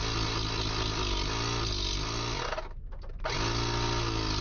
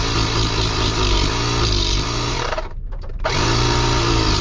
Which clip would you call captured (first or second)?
first